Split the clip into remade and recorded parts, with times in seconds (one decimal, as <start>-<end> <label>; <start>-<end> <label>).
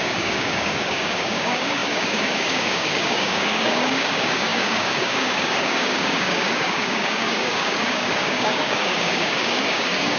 0.0-10.2 remade